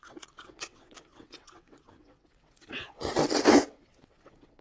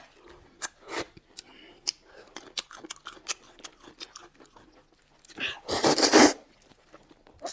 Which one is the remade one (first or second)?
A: first